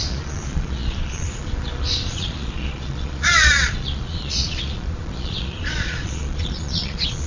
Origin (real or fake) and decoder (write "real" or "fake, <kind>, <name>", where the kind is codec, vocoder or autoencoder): fake, vocoder, Vocos